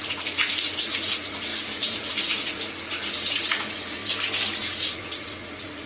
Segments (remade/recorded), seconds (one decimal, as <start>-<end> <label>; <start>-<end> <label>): 0.0-4.0 remade; 4.0-4.5 recorded; 4.5-5.9 remade